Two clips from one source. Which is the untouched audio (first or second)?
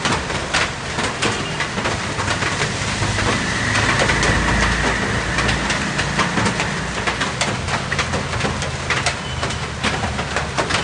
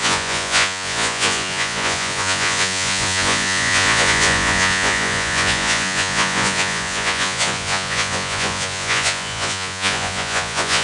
first